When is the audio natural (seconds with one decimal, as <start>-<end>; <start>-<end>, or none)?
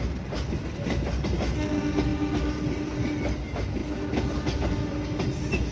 0.0-5.7